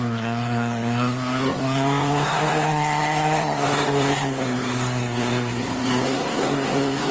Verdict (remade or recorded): remade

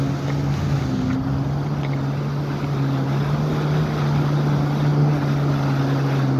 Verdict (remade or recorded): recorded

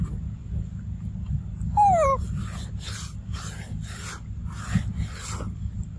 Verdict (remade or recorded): recorded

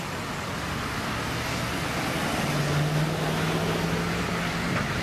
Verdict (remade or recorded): recorded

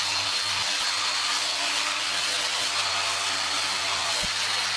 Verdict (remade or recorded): recorded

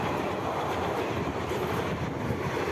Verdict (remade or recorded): recorded